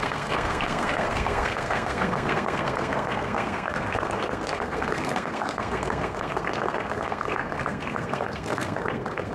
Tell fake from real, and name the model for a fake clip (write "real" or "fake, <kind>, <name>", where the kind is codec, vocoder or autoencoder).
fake, codec, SNAC